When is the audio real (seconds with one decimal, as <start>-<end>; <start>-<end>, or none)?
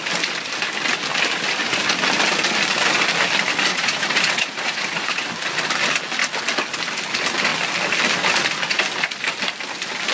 0.0-3.7; 5.3-10.1